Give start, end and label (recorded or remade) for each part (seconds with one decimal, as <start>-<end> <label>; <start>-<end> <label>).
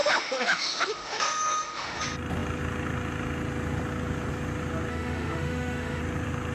0.0-2.0 remade; 2.0-4.9 recorded; 4.9-6.0 remade; 6.0-6.5 recorded